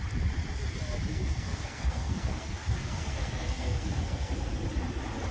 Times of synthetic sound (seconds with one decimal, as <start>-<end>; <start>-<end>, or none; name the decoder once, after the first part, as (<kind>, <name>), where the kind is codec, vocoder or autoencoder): 1.1-4.3 (codec, SNAC)